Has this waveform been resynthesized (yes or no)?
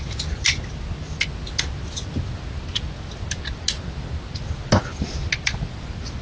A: no